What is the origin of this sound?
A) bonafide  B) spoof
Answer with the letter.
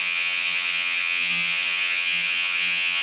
B